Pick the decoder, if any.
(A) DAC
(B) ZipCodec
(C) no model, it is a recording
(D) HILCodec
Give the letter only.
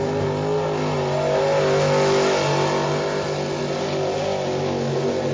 C